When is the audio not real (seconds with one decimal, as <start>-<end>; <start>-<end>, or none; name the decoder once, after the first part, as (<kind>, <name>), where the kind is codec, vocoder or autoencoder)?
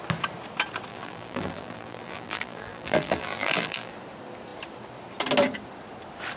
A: 0.9-3.9 (vocoder, BigVGAN v2)